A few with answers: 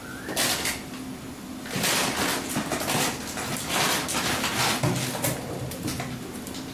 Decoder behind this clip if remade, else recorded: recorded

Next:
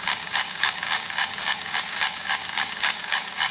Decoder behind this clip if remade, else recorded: remade, codec, DAC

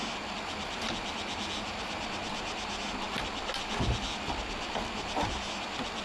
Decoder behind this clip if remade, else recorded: recorded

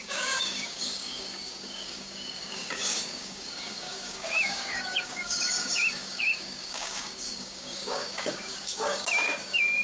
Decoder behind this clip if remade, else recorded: remade, codec, DAC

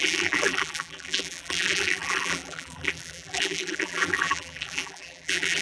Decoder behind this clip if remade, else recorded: remade, vocoder, BigVGAN v2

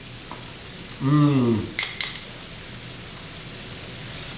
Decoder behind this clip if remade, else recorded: recorded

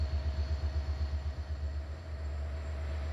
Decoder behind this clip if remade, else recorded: recorded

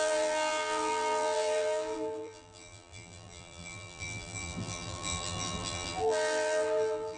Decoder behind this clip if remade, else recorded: remade, vocoder, BigVGAN v2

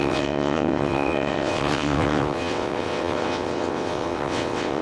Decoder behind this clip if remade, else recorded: remade, vocoder, WaveNeXt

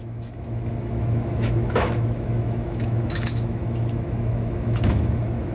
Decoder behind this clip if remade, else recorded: remade, autoencoder, DAC-VAE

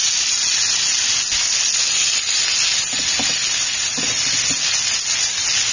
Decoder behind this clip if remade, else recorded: recorded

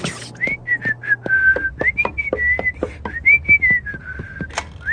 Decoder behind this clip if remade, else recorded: recorded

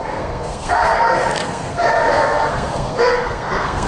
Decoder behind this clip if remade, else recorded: remade, codec, SNAC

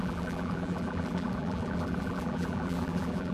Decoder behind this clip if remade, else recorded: remade, vocoder, BigVGAN v2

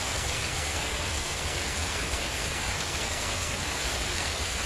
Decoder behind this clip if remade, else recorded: remade, codec, SNAC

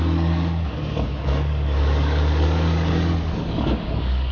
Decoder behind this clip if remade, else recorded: remade, codec, DAC